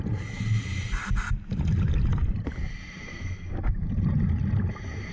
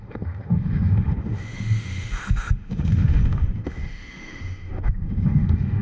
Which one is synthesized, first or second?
second